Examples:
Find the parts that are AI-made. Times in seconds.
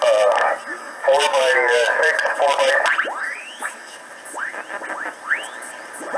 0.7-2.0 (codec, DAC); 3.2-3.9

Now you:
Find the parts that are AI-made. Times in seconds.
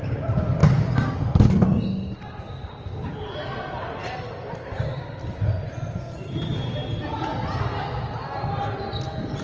0.6-1.2 (codec, DAC)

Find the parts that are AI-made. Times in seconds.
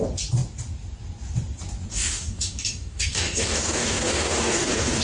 1.9-5.0 (codec, DAC)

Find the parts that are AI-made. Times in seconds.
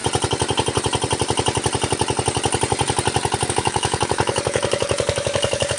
3.5-5.8 (codec, DAC)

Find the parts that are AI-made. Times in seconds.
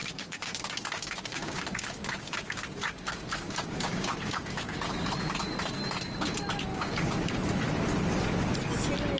0.0-5.1 (codec, DAC); 6.7-7.3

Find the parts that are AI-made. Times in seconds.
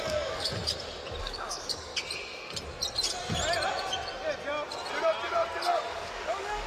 0.0-0.5 (codec, DAC); 1.2-1.9; 5.9-6.7